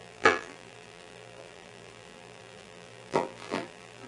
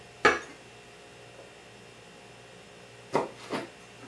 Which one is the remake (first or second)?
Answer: first